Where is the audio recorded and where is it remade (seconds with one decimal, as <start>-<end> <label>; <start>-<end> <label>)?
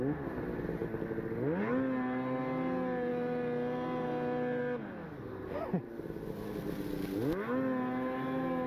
0.0-8.7 recorded